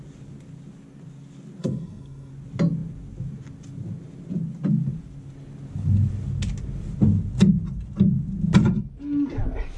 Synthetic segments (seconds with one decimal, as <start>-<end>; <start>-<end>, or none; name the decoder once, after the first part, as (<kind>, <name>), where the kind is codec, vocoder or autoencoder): 1.6-2.3 (codec, SNAC)